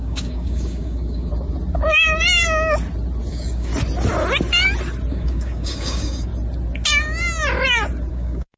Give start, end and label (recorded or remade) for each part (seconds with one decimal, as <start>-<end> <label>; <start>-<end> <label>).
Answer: 0.0-1.3 remade; 1.3-3.3 recorded; 3.3-3.7 remade; 3.7-5.1 recorded; 5.1-6.3 remade; 6.3-8.1 recorded; 8.1-8.6 remade